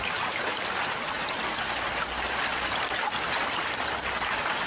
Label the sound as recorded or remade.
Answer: remade